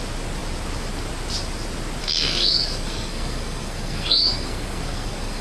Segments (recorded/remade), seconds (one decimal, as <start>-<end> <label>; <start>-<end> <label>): 0.0-2.0 recorded; 2.0-5.4 remade